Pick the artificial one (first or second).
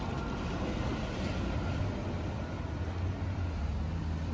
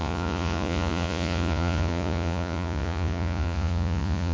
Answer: second